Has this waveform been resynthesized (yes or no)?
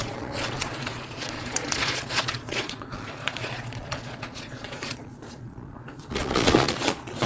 yes